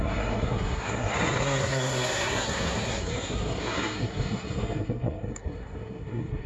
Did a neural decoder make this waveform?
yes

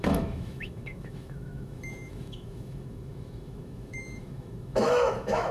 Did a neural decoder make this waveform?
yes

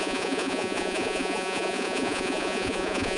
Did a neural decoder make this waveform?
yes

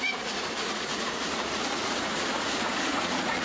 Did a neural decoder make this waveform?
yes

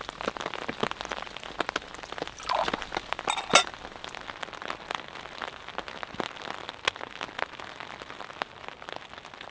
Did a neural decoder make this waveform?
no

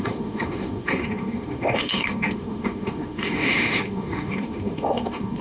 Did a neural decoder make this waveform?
yes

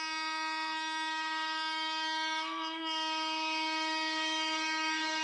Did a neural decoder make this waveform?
yes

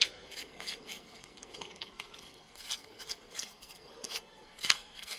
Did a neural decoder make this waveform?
yes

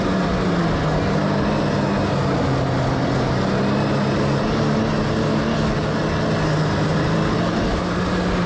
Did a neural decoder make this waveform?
no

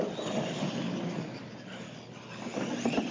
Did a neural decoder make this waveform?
no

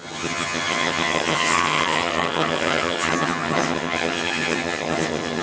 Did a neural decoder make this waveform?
yes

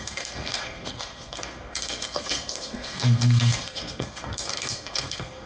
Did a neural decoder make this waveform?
yes